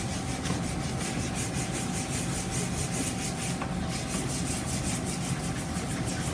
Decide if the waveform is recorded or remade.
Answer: recorded